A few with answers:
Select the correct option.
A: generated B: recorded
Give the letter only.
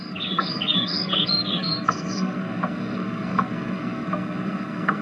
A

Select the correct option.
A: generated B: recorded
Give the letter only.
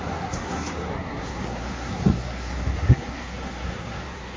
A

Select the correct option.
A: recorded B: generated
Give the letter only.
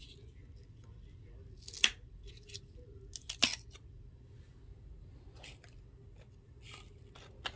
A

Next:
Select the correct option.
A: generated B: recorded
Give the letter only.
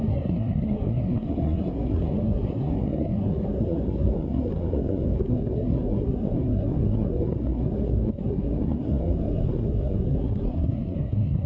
A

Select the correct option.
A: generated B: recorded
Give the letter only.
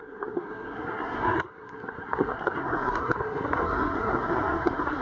A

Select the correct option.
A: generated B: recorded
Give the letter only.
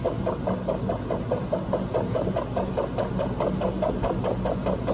B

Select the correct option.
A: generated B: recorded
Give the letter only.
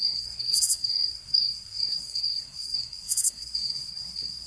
A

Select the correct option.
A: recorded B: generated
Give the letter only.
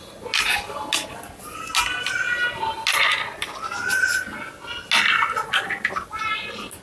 A